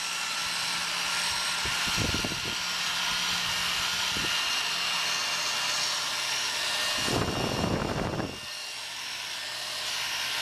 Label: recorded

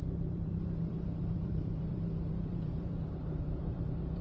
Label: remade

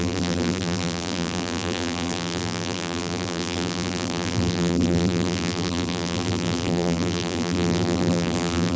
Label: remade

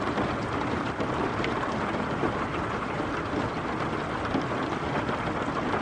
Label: remade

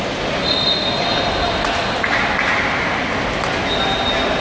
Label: recorded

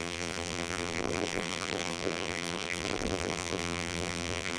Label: remade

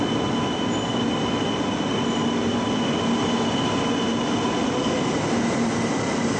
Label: recorded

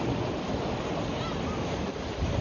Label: recorded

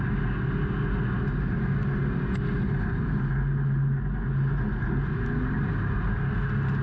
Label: recorded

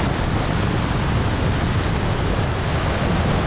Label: recorded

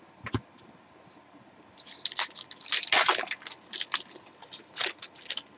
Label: recorded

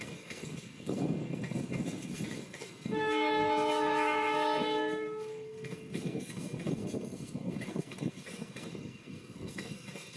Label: remade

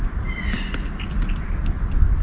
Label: recorded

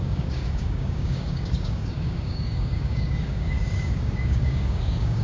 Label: remade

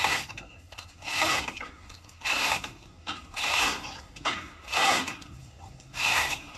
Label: remade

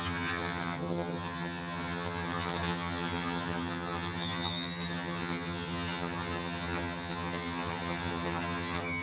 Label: remade